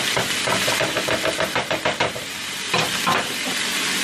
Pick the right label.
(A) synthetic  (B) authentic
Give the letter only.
B